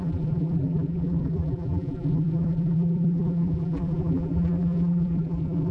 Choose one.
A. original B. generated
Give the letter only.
B